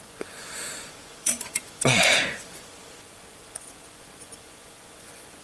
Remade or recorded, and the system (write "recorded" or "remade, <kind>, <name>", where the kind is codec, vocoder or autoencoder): remade, vocoder, Vocos